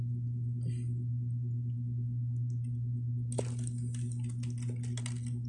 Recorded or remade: recorded